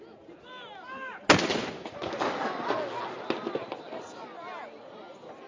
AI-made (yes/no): no